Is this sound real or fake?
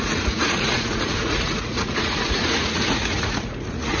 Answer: fake